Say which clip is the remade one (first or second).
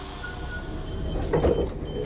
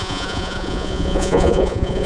second